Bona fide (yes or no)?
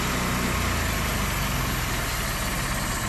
yes